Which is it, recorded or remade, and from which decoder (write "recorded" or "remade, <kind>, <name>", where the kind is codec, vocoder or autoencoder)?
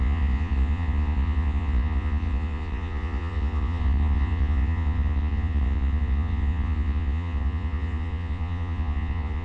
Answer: remade, vocoder, Vocos